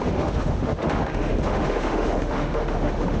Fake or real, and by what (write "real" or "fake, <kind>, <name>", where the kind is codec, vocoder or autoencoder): fake, autoencoder, DAC-VAE